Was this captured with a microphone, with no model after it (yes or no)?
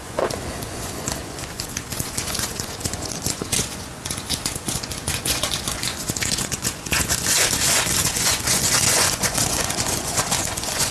no